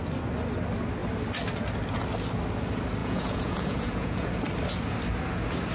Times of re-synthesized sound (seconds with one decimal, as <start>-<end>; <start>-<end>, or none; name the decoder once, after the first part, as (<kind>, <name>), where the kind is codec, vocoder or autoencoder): 3.0-4.3 (vocoder, Vocos)